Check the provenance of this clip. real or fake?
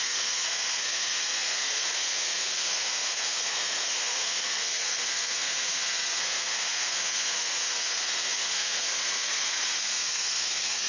fake